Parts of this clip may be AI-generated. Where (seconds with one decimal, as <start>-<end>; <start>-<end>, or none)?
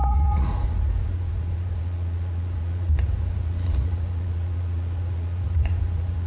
0.0-6.3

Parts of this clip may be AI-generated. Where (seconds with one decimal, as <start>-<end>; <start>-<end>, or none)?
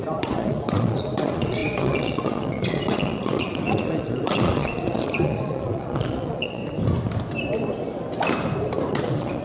0.0-6.6; 8.9-9.4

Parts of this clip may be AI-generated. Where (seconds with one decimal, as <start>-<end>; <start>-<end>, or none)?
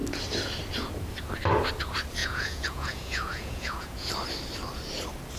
2.2-4.1